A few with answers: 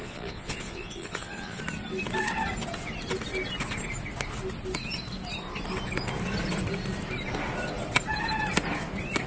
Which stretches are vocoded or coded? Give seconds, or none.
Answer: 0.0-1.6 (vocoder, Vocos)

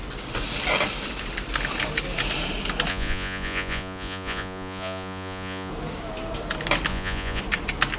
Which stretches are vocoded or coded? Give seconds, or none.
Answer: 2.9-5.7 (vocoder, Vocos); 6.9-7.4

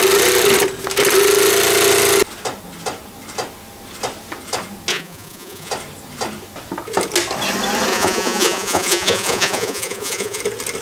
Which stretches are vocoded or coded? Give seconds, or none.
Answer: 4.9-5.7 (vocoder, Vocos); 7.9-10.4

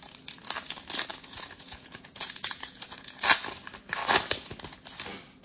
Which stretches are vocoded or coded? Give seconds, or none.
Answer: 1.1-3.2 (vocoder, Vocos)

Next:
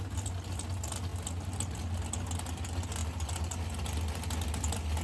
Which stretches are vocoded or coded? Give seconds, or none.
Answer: none

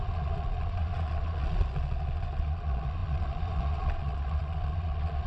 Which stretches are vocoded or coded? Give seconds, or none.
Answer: 0.0-5.3 (vocoder, Vocos)